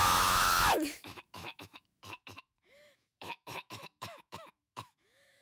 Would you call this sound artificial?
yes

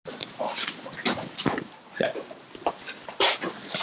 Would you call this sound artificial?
no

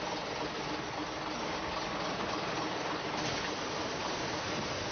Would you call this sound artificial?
no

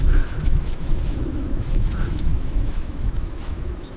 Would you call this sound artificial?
yes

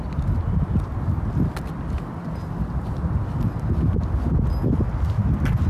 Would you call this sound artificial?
no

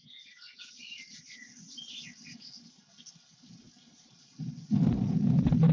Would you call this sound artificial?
no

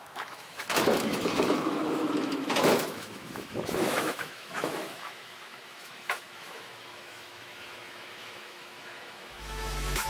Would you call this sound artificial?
yes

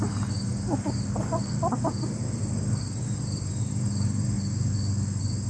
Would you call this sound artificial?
no